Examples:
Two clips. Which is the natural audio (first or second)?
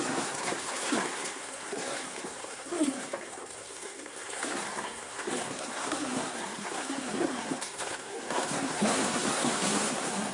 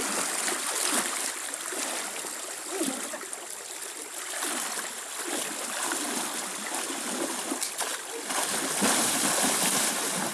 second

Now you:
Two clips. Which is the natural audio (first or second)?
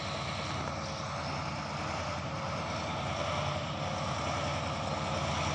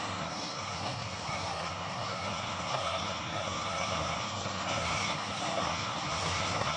first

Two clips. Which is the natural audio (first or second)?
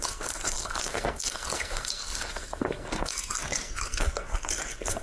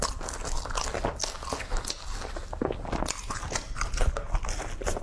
second